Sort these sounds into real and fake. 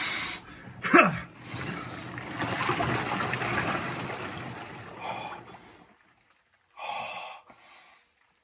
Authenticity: real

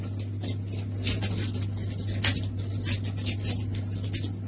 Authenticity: real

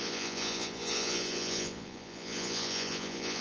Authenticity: fake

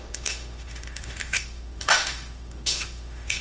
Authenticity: fake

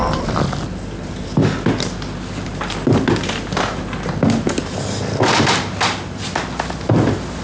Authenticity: real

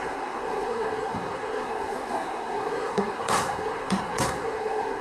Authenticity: fake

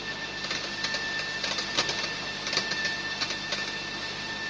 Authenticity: real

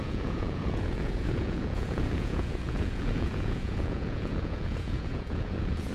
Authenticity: fake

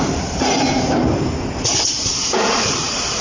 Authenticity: fake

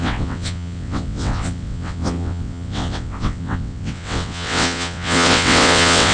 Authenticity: fake